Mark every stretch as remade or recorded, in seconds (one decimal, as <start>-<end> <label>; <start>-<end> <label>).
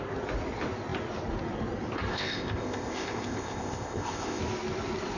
0.0-2.1 recorded; 2.1-4.4 remade; 4.4-5.2 recorded